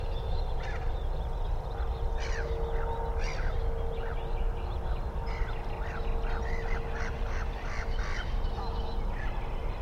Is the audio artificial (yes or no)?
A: no